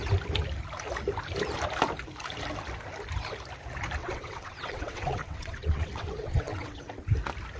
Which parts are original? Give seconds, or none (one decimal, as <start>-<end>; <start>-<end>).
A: 0.0-4.0; 7.0-7.6